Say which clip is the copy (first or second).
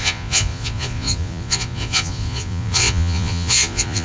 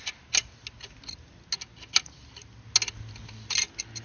first